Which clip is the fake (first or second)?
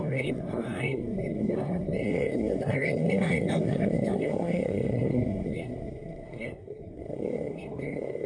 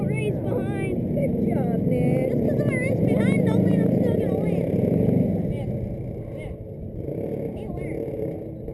first